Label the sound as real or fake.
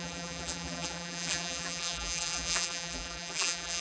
fake